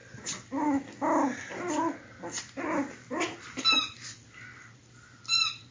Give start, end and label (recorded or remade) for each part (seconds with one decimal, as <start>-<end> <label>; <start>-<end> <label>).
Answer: 0.0-5.7 recorded